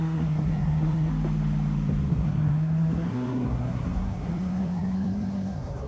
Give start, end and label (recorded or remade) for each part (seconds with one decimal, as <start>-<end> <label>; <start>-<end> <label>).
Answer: 0.0-1.1 remade; 1.1-2.1 recorded; 2.1-5.9 remade